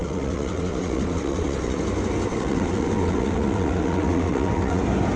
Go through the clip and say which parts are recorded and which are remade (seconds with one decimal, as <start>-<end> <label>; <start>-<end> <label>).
0.0-1.8 remade; 1.8-2.3 recorded; 2.3-4.8 remade; 4.8-5.2 recorded